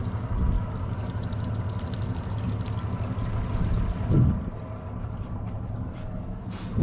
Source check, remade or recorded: recorded